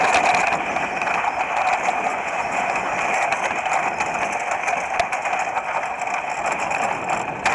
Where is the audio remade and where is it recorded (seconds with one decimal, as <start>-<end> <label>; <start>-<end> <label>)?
0.0-2.1 recorded; 2.1-2.9 remade; 2.9-7.5 recorded